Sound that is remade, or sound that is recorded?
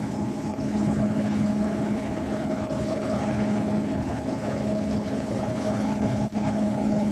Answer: remade